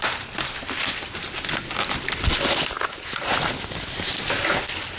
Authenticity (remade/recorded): recorded